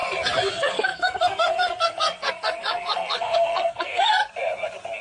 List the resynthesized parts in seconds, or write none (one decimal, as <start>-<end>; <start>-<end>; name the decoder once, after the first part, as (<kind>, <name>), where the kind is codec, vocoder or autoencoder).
0.5-4.2 (codec, SNAC)